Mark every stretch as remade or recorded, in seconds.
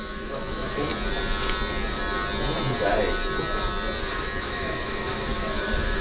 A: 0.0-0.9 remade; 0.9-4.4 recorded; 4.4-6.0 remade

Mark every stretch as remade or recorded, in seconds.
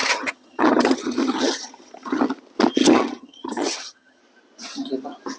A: 0.0-2.2 remade; 2.2-2.8 recorded; 2.8-4.2 remade; 4.2-5.4 recorded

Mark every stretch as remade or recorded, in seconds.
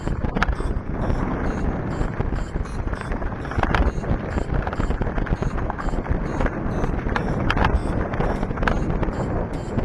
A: 0.0-9.8 recorded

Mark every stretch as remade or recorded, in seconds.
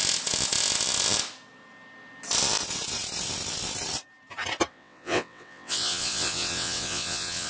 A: 0.0-4.7 recorded; 4.7-7.5 remade